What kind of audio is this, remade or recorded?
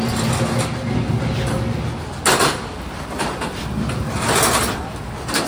recorded